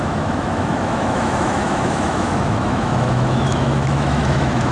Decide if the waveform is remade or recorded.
remade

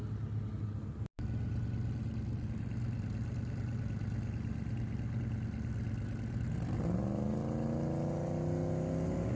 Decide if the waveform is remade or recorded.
recorded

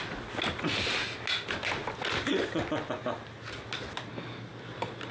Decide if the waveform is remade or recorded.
recorded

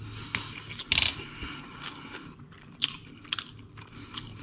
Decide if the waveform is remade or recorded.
recorded